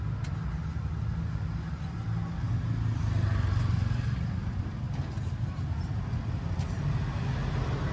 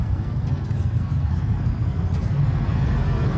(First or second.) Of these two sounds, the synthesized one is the second